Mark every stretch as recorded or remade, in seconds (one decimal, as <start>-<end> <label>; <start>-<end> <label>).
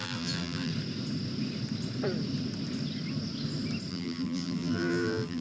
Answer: 0.0-0.7 remade; 0.7-3.9 recorded; 3.9-5.4 remade